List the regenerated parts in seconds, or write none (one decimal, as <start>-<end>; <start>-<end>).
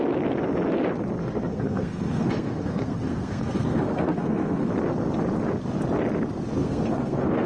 1.2-4.7; 6.6-7.5